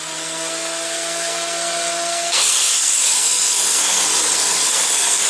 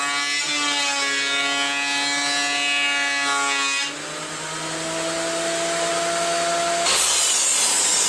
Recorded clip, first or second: second